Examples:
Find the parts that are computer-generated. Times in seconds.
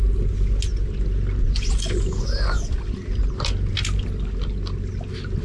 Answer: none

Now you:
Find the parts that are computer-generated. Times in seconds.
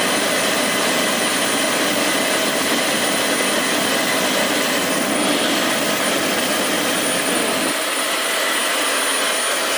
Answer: 3.9-8.4 (vocoder, BigVGAN v2)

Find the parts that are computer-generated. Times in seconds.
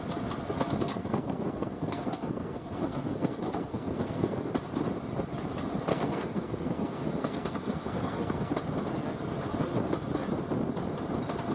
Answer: 0.9-4.5 (codec, SNAC); 5.9-8.5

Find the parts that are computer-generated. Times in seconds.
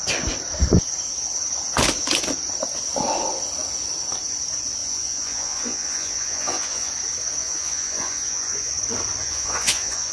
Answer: 4.8-6.9 (vocoder, Vocos); 7.4-8.7; 9.2-10.1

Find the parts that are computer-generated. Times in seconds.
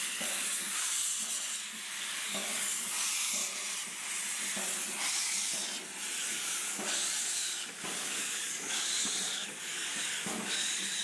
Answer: 0.0-1.1 (codec, DAC); 2.0-3.4; 5.1-5.6; 6.2-11.0